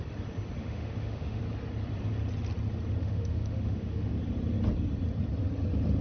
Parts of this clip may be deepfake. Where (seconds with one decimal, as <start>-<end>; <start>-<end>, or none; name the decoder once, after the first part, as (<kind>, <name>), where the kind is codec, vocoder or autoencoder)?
0.6-1.4 (autoencoder, DAC-VAE); 3.0-4.1